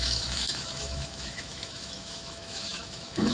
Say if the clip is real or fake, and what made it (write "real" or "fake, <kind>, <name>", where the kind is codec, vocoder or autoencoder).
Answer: fake, autoencoder, DAC-VAE